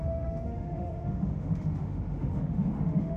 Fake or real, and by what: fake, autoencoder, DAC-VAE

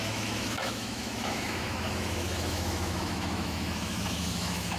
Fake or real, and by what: fake, autoencoder, DAC-VAE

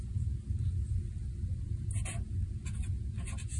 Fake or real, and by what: real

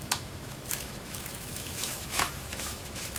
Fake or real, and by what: fake, autoencoder, DAC-VAE